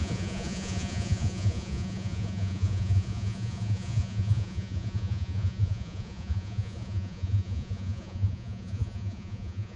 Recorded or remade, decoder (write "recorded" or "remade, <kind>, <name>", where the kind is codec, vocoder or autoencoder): remade, vocoder, Vocos